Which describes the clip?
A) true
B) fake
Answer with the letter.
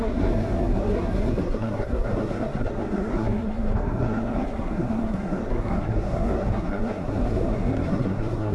B